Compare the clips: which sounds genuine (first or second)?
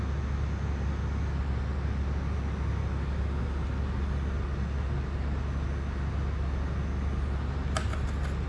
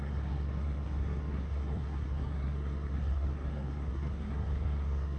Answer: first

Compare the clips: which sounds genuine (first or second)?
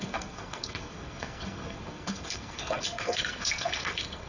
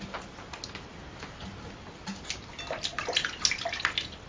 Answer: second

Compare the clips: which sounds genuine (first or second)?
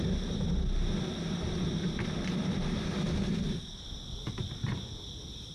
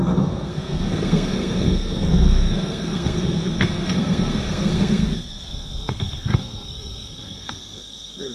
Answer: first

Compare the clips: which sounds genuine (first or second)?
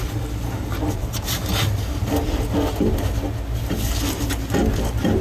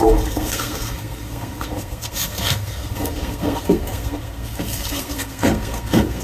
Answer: first